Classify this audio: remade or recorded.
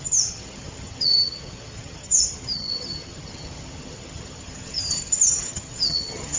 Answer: remade